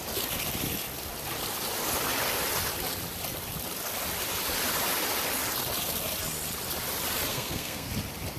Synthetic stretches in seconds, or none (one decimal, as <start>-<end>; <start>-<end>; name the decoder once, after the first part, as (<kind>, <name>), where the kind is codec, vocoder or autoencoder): 7.3-7.9 (codec, SNAC)